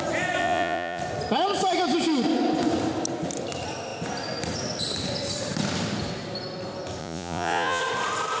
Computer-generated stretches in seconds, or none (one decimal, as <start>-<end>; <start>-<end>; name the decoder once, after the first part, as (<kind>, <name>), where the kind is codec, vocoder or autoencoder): 0.4-1.0 (vocoder, Vocos); 7.0-7.8